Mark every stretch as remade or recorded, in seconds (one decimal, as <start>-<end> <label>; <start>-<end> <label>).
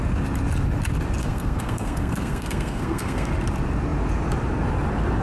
0.0-1.2 recorded; 1.2-3.3 remade; 3.3-5.2 recorded